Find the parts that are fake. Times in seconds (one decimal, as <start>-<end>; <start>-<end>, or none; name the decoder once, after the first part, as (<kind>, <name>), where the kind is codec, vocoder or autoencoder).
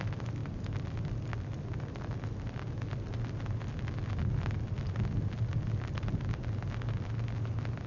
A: none